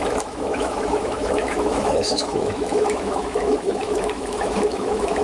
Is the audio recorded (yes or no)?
no